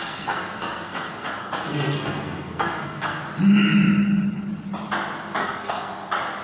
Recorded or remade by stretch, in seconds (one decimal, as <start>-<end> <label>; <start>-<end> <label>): 0.0-3.2 remade; 3.2-5.4 recorded; 5.4-5.9 remade; 5.9-6.4 recorded